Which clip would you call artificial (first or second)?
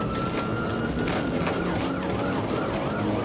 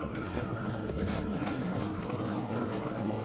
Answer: second